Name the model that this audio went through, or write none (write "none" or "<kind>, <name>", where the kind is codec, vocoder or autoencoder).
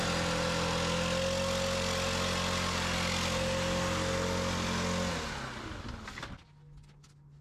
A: none